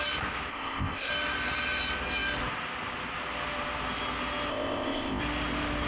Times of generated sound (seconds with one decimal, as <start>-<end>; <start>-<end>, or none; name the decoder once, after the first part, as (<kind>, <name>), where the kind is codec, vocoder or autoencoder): 0.5-1.1 (codec, ZipCodec); 4.5-5.2